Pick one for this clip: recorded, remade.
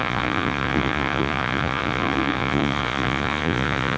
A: remade